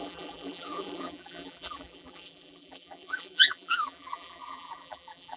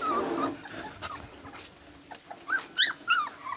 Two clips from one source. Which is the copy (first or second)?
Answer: first